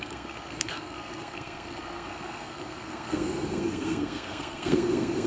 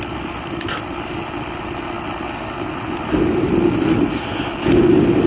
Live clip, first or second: second